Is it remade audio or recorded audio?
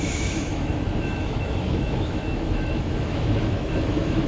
remade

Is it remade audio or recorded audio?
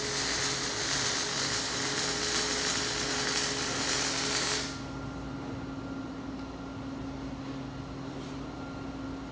recorded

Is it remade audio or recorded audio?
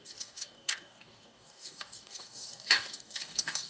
remade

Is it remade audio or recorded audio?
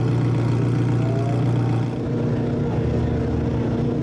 recorded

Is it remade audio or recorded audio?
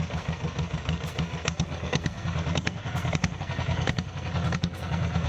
remade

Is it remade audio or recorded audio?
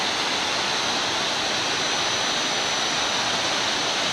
recorded